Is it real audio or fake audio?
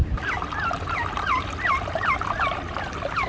real